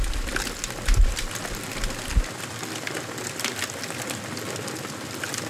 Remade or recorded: recorded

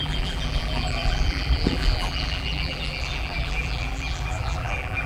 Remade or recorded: remade